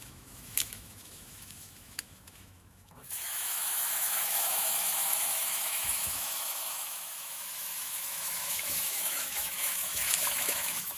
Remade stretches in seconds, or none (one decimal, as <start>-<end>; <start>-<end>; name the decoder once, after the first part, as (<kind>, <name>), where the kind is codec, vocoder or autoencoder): 0.0-11.0 (autoencoder, DAC-VAE)